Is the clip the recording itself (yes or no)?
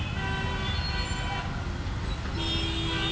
yes